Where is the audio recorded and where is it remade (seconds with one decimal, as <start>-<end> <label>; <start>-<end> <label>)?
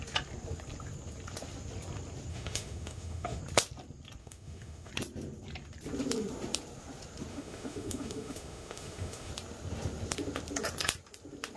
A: 0.0-2.3 recorded; 2.3-3.4 remade; 3.4-4.2 recorded; 4.2-4.9 remade; 4.9-7.3 recorded; 7.3-9.3 remade; 9.3-11.6 recorded